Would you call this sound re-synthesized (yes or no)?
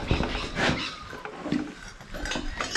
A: no